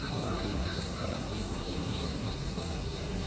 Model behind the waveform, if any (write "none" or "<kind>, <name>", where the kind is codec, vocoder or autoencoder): codec, SNAC